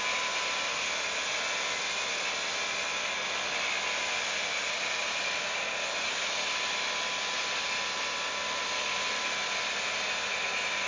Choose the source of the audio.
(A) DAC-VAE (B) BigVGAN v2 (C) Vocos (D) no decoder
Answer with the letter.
D